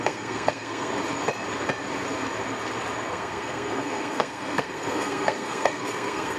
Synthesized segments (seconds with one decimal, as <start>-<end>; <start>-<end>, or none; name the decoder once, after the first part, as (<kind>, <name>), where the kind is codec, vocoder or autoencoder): 0.0-0.9 (codec, SNAC); 3.1-6.4